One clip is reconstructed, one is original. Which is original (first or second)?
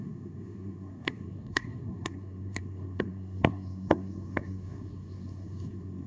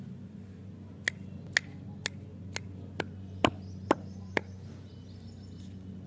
second